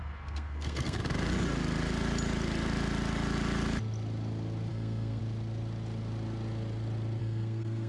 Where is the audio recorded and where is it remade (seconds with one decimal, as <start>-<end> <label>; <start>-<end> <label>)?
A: 0.0-1.0 remade; 1.0-4.7 recorded; 4.7-5.2 remade; 5.2-7.2 recorded; 7.2-7.9 remade